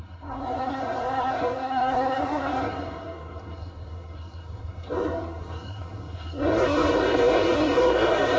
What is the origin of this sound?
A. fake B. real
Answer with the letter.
A